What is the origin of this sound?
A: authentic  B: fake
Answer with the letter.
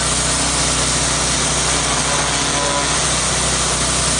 A